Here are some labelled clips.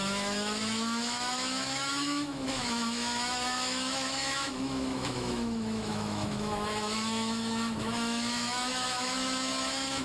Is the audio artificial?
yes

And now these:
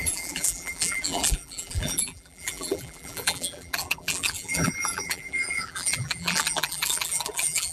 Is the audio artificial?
yes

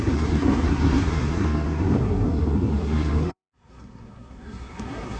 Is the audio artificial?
yes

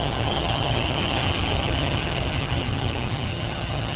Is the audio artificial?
yes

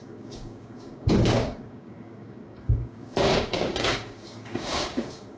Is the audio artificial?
yes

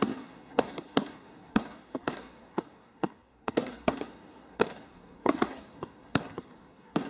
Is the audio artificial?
yes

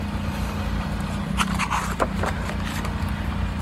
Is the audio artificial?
no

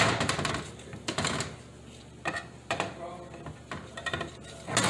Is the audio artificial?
no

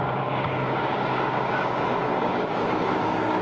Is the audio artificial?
yes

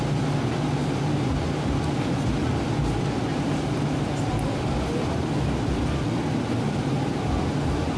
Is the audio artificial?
no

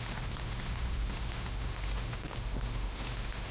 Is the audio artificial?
yes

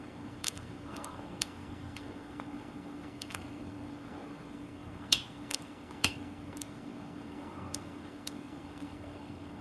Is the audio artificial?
yes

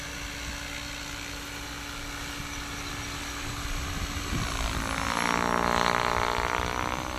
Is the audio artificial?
no